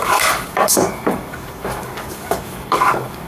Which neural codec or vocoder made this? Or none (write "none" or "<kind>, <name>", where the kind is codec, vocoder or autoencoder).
codec, DAC